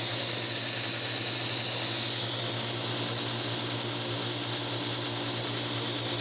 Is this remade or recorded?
recorded